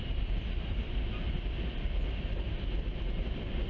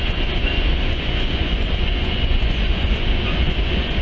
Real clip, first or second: first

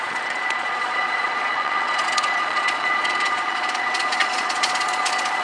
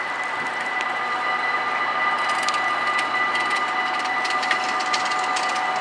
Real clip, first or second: second